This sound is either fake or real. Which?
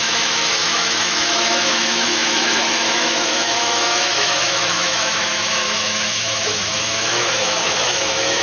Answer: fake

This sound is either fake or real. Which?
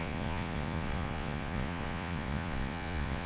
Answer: fake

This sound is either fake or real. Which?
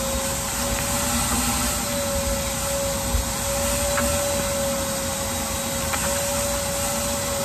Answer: real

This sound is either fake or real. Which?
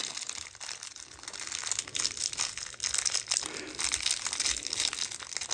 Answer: real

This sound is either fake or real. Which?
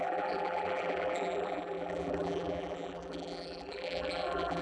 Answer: fake